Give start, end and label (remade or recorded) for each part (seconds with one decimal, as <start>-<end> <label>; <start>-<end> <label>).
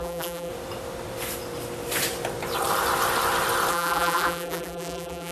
0.0-0.5 remade; 0.5-3.7 recorded; 3.7-5.3 remade